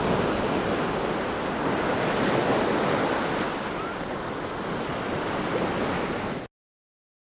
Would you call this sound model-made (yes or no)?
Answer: no